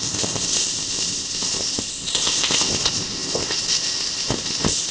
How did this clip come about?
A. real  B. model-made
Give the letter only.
B